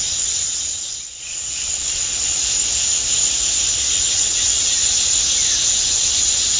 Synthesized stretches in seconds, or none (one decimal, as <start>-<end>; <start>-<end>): 0.0-2.3; 4.1-4.8; 5.7-6.6